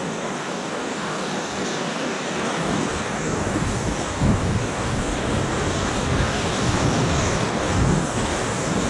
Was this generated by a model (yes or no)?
yes